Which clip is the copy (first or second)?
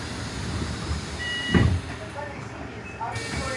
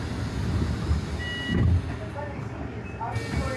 first